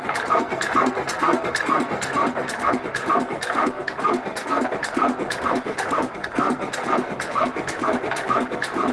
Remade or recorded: remade